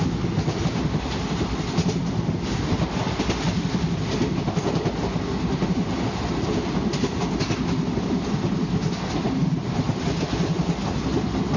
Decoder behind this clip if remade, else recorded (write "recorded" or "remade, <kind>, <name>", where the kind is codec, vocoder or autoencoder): recorded